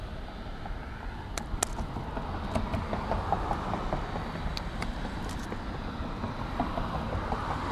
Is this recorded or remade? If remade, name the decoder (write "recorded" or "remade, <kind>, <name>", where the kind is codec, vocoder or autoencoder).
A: recorded